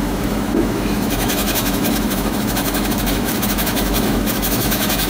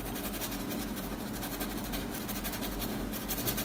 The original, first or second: second